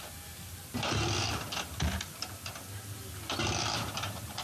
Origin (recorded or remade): recorded